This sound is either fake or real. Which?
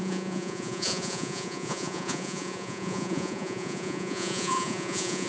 fake